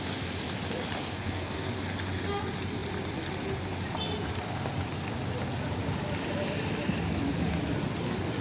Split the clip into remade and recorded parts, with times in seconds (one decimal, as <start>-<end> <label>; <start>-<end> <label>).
0.0-1.0 recorded; 1.0-1.7 remade; 1.7-8.4 recorded